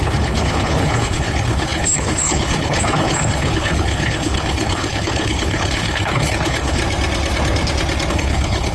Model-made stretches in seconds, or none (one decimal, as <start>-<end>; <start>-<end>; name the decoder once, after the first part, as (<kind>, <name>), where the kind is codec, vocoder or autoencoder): 0.0-6.8 (codec, HILCodec); 8.1-8.7